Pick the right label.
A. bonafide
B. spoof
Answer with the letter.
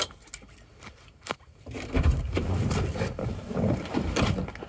B